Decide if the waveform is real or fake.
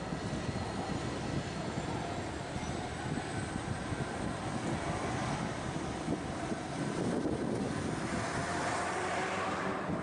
real